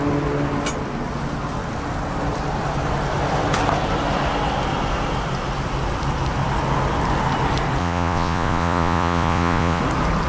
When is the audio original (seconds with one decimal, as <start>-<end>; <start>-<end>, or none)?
0.0-7.8; 9.8-10.3